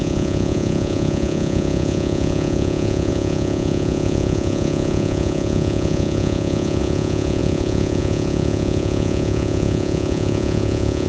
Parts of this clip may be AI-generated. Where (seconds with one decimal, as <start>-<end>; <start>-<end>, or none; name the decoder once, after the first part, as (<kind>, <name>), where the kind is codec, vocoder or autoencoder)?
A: 0.0-11.1 (vocoder, Vocos)